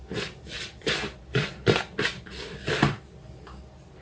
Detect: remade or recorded recorded